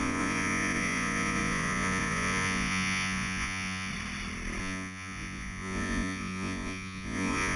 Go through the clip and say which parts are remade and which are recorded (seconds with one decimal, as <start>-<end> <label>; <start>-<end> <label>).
0.0-3.9 remade; 3.9-4.6 recorded; 4.6-7.6 remade

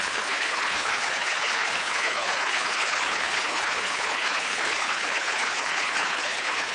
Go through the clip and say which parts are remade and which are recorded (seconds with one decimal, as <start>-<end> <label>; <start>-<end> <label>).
0.0-6.7 remade

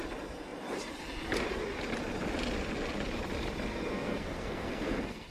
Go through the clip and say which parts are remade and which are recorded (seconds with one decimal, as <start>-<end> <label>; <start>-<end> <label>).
0.0-3.7 recorded; 3.7-5.3 remade

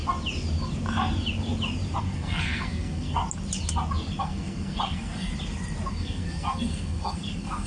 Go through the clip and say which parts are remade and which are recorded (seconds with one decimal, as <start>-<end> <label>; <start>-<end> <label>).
0.0-2.0 recorded; 2.0-3.2 remade; 3.2-4.2 recorded; 4.2-5.3 remade; 5.3-5.9 recorded; 5.9-7.7 remade

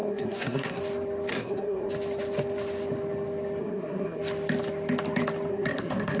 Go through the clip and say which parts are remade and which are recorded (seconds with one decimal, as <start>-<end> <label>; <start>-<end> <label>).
0.0-0.8 remade; 0.8-1.3 recorded; 1.3-1.9 remade; 1.9-3.6 recorded; 3.6-4.2 remade; 4.2-5.5 recorded; 5.5-6.2 remade

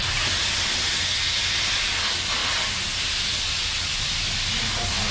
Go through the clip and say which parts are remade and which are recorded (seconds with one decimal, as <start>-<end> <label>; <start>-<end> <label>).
0.0-5.1 recorded

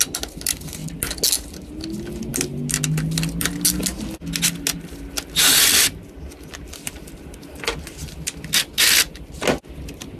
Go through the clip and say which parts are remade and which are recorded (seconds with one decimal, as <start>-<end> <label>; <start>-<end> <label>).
0.0-10.2 recorded